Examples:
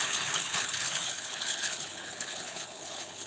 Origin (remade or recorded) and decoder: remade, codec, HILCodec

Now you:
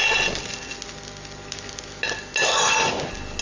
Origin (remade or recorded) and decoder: recorded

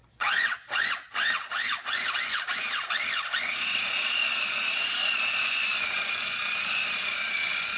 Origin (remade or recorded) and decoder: remade, vocoder, Vocos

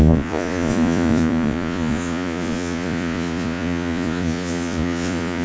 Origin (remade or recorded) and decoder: remade, vocoder, Vocos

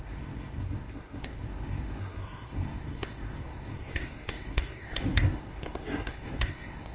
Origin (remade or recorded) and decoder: remade, codec, SNAC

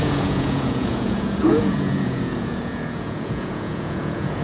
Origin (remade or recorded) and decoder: remade, vocoder, Vocos